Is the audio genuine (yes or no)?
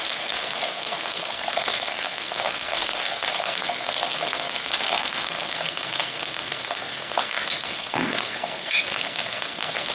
no